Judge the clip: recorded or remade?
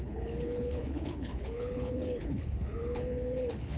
remade